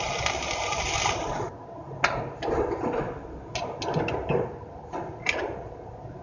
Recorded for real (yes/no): yes